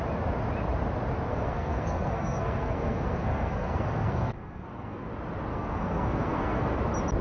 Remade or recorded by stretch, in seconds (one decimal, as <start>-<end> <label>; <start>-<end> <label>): 0.0-1.3 recorded; 1.3-5.1 remade; 5.1-5.5 recorded; 5.5-6.8 remade; 6.8-7.2 recorded